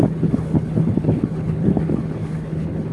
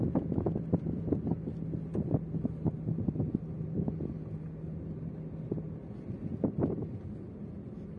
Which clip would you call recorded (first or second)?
second